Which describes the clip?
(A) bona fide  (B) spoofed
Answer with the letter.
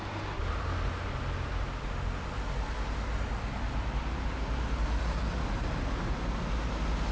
A